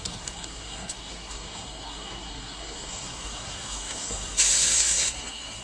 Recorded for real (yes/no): no